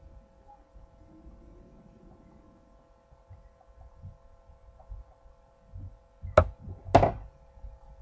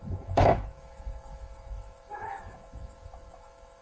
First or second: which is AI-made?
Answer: second